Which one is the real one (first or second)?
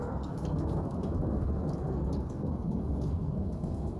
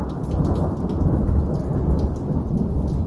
second